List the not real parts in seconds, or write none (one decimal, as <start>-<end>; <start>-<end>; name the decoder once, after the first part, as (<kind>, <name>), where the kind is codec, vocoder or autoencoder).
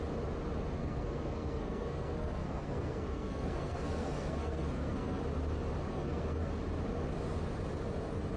0.8-5.2 (codec, SNAC); 5.9-6.5